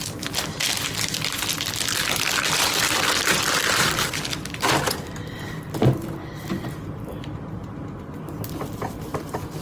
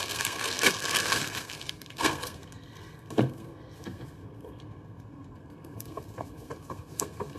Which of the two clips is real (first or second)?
first